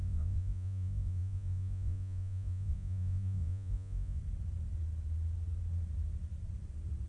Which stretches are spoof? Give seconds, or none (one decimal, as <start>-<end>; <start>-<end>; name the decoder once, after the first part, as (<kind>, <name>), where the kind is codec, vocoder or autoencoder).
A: 0.0-4.2 (vocoder, Vocos)